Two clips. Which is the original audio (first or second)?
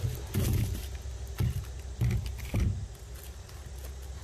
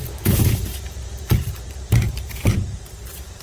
first